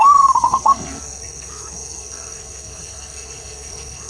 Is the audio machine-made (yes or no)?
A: yes